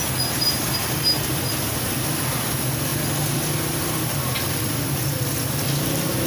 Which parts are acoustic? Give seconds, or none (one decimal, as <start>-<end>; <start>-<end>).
0.0-6.3